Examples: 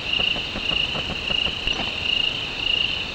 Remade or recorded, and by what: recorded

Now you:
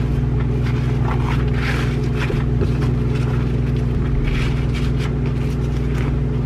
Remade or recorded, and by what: recorded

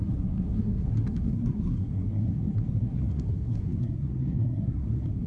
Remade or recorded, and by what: remade, codec, SNAC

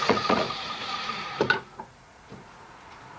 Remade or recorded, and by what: remade, vocoder, Vocos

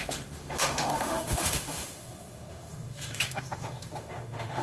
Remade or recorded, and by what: remade, autoencoder, DAC-VAE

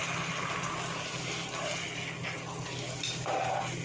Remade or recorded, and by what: recorded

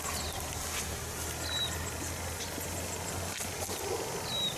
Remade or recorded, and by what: recorded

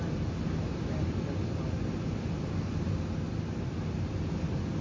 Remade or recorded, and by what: recorded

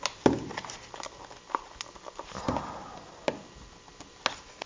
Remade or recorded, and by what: recorded